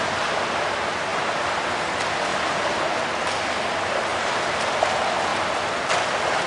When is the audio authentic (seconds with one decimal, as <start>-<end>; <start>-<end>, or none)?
0.0-1.1; 1.6-2.3; 3.5-4.1; 4.6-6.5

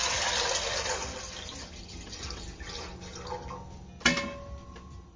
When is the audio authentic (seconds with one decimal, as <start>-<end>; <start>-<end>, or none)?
0.0-5.2

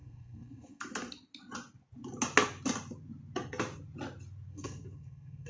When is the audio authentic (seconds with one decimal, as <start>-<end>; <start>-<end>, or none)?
0.8-4.5

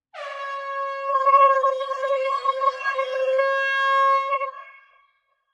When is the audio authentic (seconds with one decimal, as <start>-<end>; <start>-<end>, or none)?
0.0-1.1; 3.4-4.3

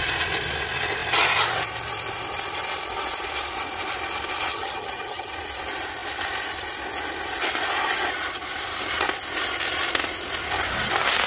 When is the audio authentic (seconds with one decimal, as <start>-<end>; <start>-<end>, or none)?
0.0-4.5; 5.3-11.3

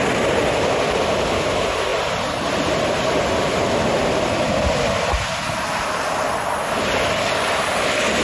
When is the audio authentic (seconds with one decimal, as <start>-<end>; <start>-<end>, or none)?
0.0-8.2